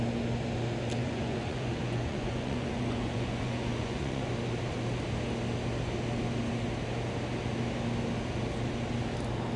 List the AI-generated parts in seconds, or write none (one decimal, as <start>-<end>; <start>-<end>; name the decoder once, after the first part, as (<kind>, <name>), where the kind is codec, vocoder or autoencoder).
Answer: 1.0-4.3 (vocoder, Vocos)

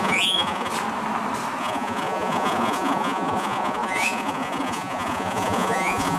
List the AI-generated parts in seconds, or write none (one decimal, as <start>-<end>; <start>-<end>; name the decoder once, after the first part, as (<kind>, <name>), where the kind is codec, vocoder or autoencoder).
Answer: 0.0-0.7 (vocoder, Vocos); 1.6-6.2

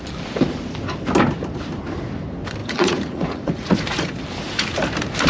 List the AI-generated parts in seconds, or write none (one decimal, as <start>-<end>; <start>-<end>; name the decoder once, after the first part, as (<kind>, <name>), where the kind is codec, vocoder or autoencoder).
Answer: 2.6-4.1 (vocoder, Vocos)

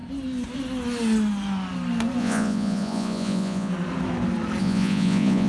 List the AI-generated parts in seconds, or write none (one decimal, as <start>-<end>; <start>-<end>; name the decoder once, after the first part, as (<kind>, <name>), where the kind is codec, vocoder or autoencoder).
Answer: 2.2-3.7 (vocoder, Vocos); 4.6-5.5

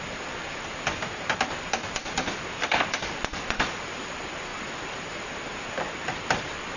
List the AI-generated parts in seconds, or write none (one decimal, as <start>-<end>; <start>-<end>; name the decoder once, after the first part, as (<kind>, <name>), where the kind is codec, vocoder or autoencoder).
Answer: none

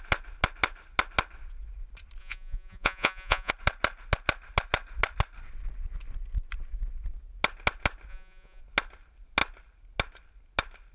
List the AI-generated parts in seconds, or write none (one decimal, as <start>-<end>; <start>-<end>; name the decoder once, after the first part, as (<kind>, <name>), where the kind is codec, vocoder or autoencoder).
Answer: 2.2-3.5 (vocoder, Vocos); 8.1-8.6

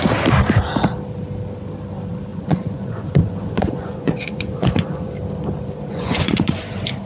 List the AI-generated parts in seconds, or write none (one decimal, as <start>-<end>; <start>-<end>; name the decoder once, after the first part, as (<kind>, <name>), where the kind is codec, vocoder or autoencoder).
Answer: 2.3-5.1 (vocoder, Vocos); 5.9-6.6

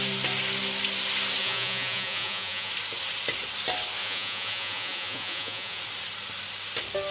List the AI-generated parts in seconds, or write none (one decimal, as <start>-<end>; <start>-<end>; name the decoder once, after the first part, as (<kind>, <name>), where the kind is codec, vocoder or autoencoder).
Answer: 1.4-2.7 (vocoder, Vocos); 4.0-5.8